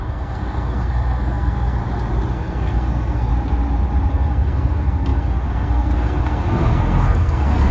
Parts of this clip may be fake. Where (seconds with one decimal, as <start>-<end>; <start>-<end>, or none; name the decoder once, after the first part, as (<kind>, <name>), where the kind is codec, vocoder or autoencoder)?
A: 0.0-1.8 (codec, SNAC); 2.3-3.3; 4.1-7.7